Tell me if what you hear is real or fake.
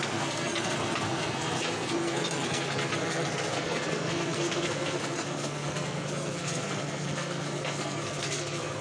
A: fake